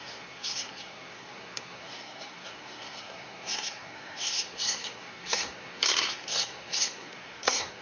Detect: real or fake fake